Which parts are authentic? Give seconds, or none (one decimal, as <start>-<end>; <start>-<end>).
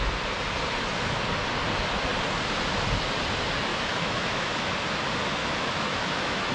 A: 0.0-3.7; 4.7-5.4